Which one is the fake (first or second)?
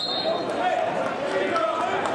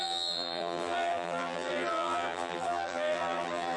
second